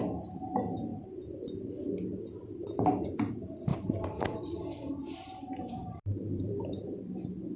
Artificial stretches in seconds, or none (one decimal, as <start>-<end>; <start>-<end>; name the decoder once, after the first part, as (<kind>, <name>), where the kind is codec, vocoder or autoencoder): 0.9-1.7 (vocoder, BigVGAN v2); 3.7-4.9; 5.8-6.8